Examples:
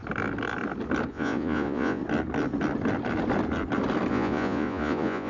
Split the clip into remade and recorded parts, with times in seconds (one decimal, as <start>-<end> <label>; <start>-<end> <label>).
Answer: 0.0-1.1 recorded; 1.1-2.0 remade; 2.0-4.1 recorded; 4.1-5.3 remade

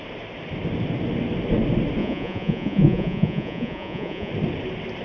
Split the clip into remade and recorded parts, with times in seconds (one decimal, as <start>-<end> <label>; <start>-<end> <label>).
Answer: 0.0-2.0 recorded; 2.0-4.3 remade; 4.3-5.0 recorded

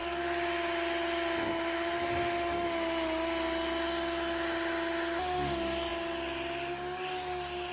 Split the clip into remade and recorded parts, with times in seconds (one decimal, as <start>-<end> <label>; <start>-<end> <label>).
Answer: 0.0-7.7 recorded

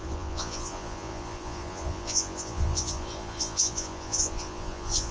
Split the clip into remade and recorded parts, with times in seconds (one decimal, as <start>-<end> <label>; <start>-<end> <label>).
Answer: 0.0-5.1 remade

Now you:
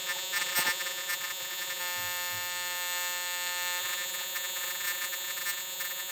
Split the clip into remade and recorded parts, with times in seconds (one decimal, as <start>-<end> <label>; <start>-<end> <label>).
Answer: 0.0-1.8 remade; 1.8-3.8 recorded; 3.8-6.1 remade

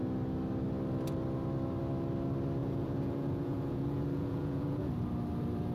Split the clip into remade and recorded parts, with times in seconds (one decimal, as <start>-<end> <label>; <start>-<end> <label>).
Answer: 0.0-2.6 recorded; 2.6-4.9 remade; 4.9-5.7 recorded

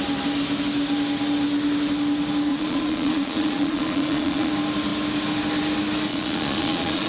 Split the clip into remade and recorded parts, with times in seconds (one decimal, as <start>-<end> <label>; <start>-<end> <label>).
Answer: 0.0-2.5 recorded; 2.5-4.5 remade; 4.5-6.1 recorded; 6.1-7.1 remade